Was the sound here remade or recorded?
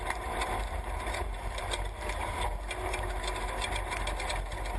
recorded